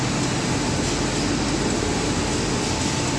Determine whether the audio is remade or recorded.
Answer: recorded